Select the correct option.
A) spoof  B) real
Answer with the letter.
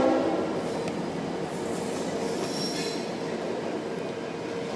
B